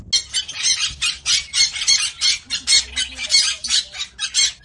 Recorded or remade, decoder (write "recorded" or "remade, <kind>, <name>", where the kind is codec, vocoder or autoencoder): recorded